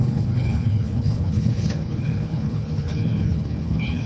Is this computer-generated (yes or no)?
yes